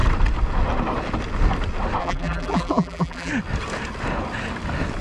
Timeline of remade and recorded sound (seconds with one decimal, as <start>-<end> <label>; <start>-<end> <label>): 0.0-2.0 recorded; 2.0-3.3 remade; 3.3-5.0 recorded